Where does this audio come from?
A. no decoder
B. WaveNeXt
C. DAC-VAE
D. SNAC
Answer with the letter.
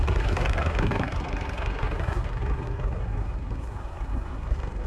D